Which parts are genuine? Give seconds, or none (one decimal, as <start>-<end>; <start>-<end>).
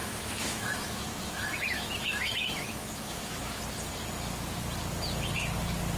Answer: 3.6-6.0